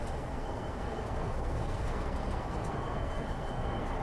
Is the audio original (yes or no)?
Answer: no